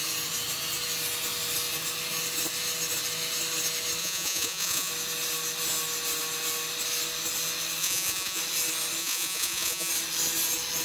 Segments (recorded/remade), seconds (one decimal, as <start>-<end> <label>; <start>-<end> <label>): 0.0-4.0 recorded; 4.0-4.9 remade; 4.9-7.8 recorded; 7.8-8.4 remade; 8.4-9.0 recorded; 9.0-9.9 remade; 9.9-10.8 recorded